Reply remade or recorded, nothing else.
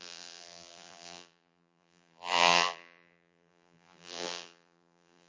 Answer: remade